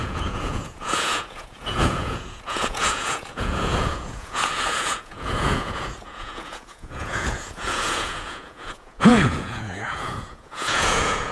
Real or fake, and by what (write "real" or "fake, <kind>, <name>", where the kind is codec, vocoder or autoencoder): fake, vocoder, Vocos